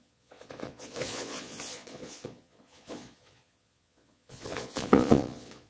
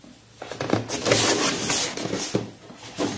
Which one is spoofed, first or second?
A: first